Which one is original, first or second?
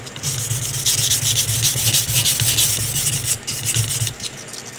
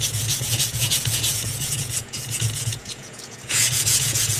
first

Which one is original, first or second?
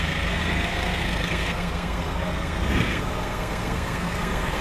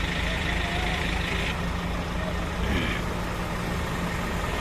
second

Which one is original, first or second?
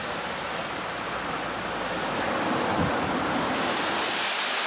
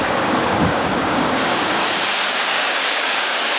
first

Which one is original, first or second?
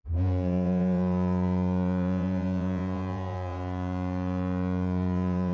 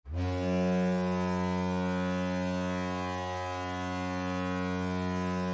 second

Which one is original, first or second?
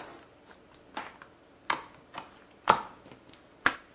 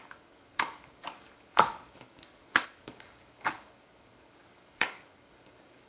first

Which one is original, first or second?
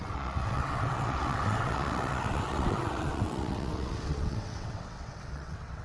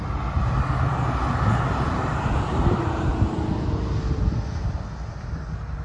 second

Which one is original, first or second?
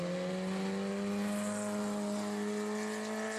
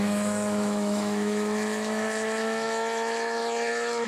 first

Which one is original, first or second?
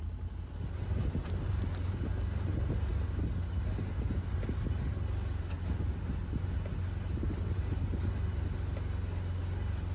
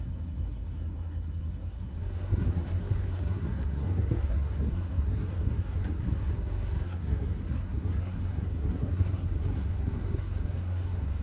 first